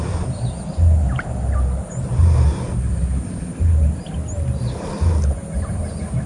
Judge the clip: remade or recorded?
recorded